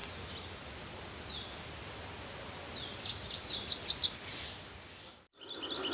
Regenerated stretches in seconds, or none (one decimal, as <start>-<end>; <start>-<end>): none